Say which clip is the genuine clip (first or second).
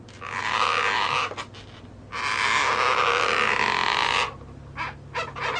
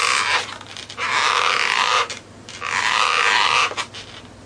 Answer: first